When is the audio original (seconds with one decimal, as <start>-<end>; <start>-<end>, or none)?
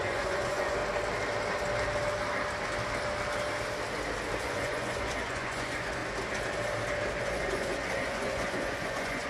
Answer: 0.8-4.4; 6.0-7.2